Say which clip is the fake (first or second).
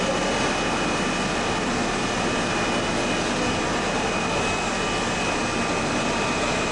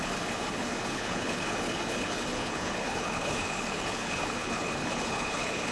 second